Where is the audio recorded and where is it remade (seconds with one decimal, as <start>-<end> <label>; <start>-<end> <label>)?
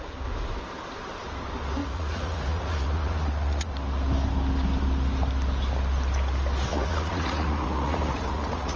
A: 0.0-1.8 recorded; 1.8-3.7 remade; 3.7-6.7 recorded; 6.7-8.8 remade